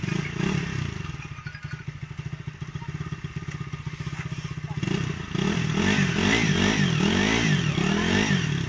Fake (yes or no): no